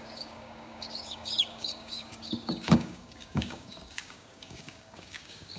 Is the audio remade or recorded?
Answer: remade